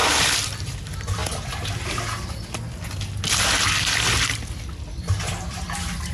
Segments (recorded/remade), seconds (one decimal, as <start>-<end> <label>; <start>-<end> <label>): 0.0-0.6 remade; 0.6-6.1 recorded